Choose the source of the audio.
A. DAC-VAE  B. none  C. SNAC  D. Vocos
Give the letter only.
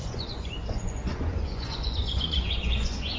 D